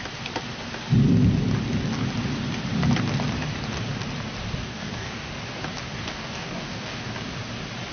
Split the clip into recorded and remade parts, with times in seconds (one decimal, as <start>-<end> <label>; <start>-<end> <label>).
0.0-4.6 recorded; 4.6-5.3 remade; 5.3-5.9 recorded; 5.9-7.1 remade; 7.1-7.9 recorded